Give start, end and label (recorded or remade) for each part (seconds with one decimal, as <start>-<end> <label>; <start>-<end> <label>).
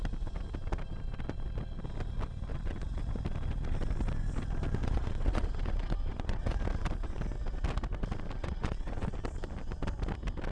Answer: 0.0-2.5 recorded; 2.5-3.1 remade; 3.1-4.8 recorded; 4.8-6.6 remade; 6.6-8.4 recorded; 8.4-9.1 remade; 9.1-10.5 recorded